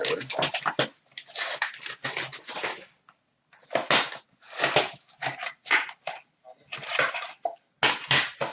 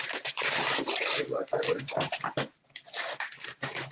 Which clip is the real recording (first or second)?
first